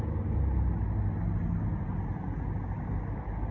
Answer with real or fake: real